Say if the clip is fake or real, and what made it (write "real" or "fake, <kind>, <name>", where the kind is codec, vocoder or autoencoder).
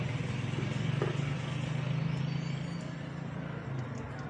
real